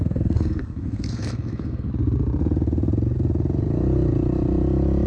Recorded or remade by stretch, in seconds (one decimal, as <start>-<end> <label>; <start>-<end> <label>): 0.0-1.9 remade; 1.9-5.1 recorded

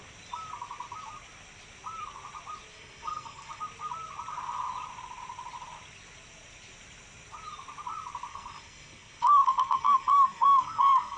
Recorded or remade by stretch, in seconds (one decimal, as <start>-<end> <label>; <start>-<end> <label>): 0.0-2.7 recorded; 2.7-3.6 remade; 3.6-8.3 recorded; 8.3-11.2 remade

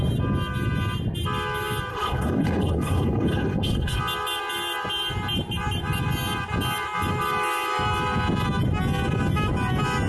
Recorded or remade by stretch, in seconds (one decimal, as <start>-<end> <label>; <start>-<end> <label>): 0.0-1.9 recorded; 1.9-4.0 remade; 4.0-10.1 recorded

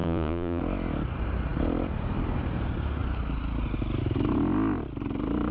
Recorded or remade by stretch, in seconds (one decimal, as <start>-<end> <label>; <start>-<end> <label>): 0.0-0.6 remade; 0.6-5.5 recorded